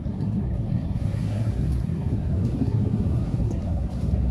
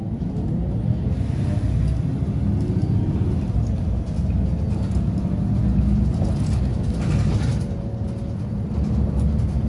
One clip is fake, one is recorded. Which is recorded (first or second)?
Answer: second